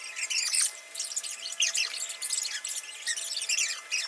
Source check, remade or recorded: recorded